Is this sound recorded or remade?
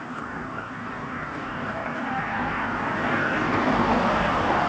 remade